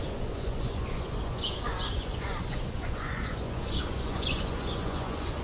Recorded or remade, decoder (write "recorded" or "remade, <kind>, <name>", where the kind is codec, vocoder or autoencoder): remade, vocoder, Vocos